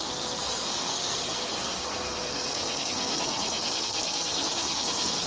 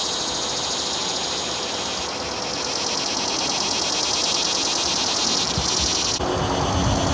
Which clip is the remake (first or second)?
first